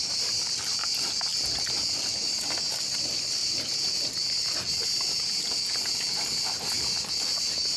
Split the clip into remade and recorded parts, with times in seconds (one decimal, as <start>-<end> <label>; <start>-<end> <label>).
0.0-7.8 recorded